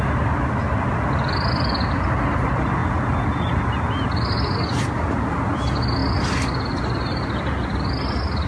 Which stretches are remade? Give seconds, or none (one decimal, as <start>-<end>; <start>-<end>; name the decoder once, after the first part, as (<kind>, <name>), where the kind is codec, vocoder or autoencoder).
none